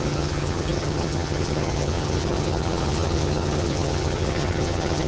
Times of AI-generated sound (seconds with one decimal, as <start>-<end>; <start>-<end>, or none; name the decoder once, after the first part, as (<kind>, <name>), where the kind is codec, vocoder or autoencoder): 0.0-5.1 (vocoder, HiFi-GAN)